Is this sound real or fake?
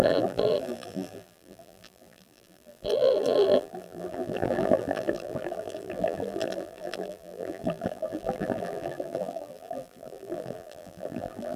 fake